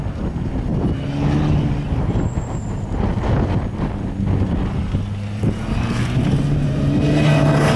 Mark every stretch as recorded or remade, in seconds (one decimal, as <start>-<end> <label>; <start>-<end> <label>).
0.0-7.8 recorded